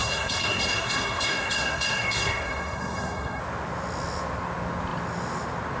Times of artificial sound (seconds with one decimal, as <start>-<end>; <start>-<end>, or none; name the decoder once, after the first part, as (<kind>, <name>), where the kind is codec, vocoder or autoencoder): 0.0-3.4 (codec, SNAC)

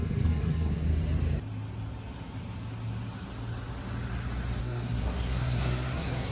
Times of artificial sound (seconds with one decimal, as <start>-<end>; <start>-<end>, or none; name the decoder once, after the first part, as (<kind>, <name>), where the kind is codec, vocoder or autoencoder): 0.0-0.8 (codec, SNAC); 4.6-6.3

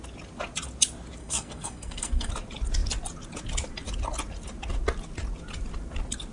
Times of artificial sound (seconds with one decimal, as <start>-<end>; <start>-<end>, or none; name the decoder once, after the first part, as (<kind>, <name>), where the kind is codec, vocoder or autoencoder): 1.2-2.3 (codec, SNAC)

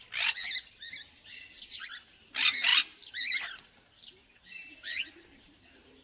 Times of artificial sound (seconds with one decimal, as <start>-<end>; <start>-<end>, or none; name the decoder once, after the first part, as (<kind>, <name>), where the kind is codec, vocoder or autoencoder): none

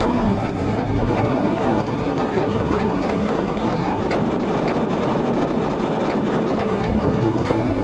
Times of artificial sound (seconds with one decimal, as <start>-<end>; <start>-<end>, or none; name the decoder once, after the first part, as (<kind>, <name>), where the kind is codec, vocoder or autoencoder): 0.0-4.0 (codec, SNAC); 6.6-7.8